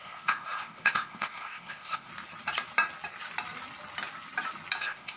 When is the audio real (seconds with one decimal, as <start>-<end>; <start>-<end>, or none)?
2.1-4.8